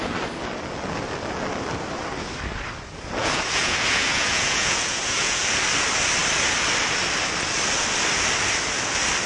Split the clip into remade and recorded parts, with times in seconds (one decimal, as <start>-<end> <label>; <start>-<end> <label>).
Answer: 0.0-3.2 recorded; 3.2-5.4 remade; 5.4-9.3 recorded

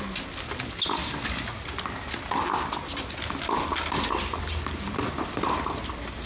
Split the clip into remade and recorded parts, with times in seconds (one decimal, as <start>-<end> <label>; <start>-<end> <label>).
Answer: 0.0-6.3 recorded

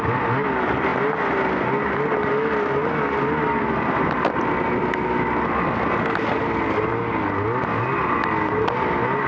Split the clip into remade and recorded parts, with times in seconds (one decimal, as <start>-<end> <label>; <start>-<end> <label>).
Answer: 0.0-9.3 recorded

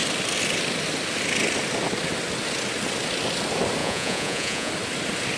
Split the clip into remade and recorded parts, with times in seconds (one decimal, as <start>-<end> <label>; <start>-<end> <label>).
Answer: 0.0-3.8 recorded; 3.8-4.7 remade; 4.7-5.4 recorded

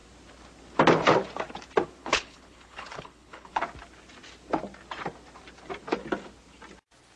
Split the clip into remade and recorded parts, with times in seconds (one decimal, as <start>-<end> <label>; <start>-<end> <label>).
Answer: 0.0-2.0 recorded; 2.0-3.6 remade; 3.6-7.2 recorded